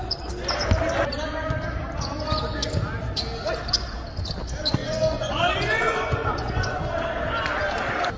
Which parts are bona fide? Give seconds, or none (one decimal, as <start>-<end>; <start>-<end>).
0.0-4.8; 6.8-8.2